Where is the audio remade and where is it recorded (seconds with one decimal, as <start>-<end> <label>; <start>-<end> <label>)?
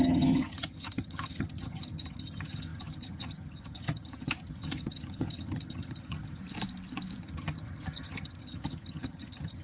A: 0.0-6.4 remade; 6.4-7.2 recorded; 7.2-9.6 remade